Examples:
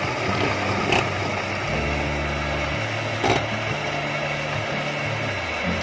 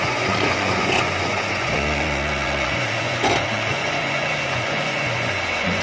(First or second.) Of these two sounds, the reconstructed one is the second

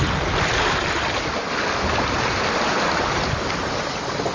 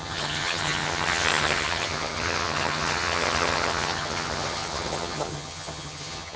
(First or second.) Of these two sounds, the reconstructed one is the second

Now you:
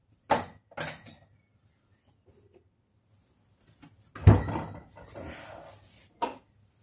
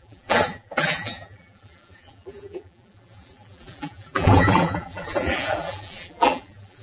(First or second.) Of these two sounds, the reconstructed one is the second